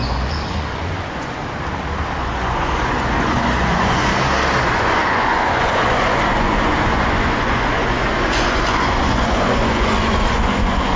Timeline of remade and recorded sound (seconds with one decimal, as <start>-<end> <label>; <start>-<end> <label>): 0.0-1.4 remade; 1.4-2.2 recorded; 2.2-4.1 remade; 4.1-4.6 recorded; 4.6-11.0 remade